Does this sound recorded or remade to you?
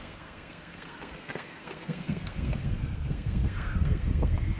remade